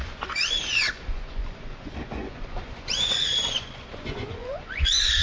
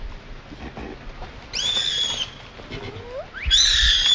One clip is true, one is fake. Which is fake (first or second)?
first